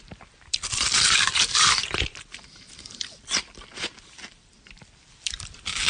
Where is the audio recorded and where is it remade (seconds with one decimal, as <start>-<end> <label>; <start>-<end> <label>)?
0.0-5.9 remade